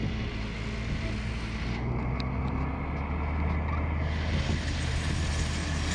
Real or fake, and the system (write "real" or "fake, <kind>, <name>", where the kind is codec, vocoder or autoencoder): real